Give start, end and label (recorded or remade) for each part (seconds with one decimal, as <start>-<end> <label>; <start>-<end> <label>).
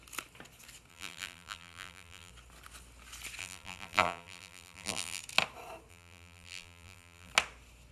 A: 0.0-0.9 recorded; 0.9-2.3 remade; 2.3-3.4 recorded; 3.4-5.2 remade; 5.2-5.9 recorded; 5.9-7.3 remade; 7.3-7.9 recorded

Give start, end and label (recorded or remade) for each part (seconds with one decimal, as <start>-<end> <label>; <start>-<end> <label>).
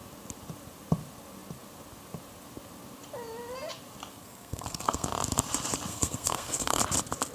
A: 0.0-4.1 recorded; 4.1-5.1 remade; 5.1-5.9 recorded; 5.9-6.8 remade; 6.8-7.3 recorded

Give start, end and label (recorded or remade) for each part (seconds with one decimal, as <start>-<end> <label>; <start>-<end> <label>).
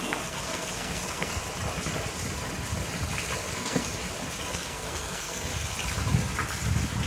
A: 0.0-1.4 remade; 1.4-3.5 recorded; 3.5-3.9 remade; 3.9-4.5 recorded; 4.5-5.5 remade; 5.5-7.1 recorded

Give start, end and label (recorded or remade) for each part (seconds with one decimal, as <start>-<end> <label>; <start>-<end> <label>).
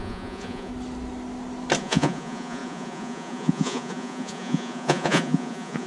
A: 0.0-0.7 remade; 0.7-1.8 recorded; 1.8-5.9 remade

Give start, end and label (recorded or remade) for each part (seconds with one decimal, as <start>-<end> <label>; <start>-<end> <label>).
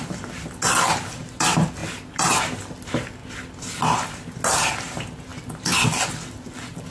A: 0.0-6.9 recorded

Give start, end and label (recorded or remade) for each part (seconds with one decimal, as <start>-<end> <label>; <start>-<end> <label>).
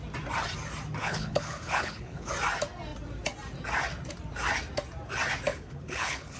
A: 0.0-1.0 recorded; 1.0-2.3 remade; 2.3-5.5 recorded; 5.5-6.4 remade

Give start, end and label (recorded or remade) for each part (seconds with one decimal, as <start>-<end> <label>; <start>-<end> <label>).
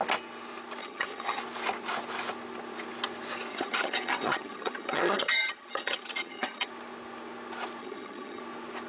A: 0.0-0.8 recorded; 0.8-1.4 remade; 1.4-3.5 recorded; 3.5-6.7 remade; 6.7-7.8 recorded; 7.8-8.4 remade; 8.4-8.9 recorded